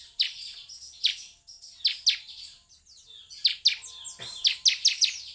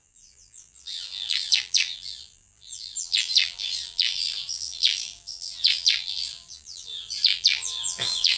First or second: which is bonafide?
first